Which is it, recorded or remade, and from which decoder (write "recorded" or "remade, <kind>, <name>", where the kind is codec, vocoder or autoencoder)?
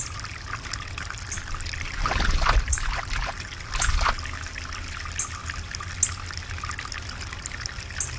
recorded